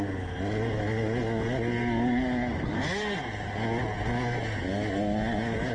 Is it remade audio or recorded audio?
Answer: recorded